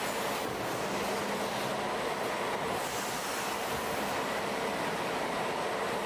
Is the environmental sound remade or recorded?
recorded